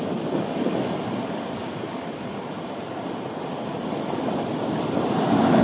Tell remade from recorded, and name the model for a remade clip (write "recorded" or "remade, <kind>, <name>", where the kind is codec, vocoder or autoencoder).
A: recorded